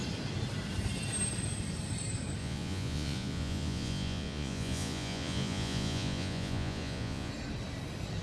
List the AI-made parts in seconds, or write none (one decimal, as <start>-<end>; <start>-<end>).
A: 2.4-7.3